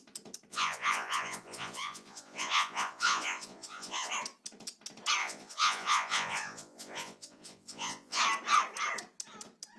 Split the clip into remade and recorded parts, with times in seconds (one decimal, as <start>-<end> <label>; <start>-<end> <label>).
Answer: 0.0-0.5 recorded; 0.5-4.1 remade; 4.1-5.2 recorded; 5.2-8.2 remade; 8.2-9.8 recorded